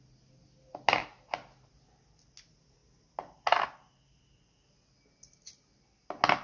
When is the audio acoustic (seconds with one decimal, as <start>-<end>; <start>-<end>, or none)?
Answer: 0.0-6.4